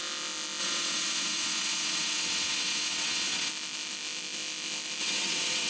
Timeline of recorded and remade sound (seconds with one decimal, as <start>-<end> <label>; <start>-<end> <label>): 0.0-0.6 recorded; 0.6-3.5 remade; 3.5-5.0 recorded; 5.0-5.7 remade